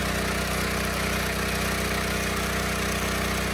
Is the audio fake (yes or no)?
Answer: no